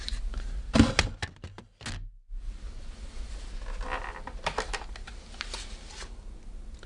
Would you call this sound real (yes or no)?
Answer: yes